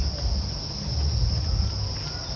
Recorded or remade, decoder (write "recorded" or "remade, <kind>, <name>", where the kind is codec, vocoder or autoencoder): recorded